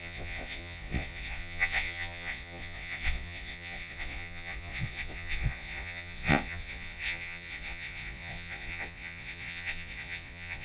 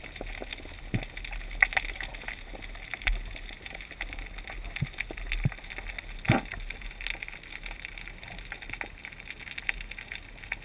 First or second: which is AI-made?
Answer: first